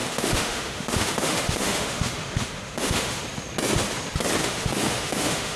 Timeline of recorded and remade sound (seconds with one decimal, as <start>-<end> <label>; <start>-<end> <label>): 0.0-3.2 remade; 3.2-4.4 recorded; 4.4-5.6 remade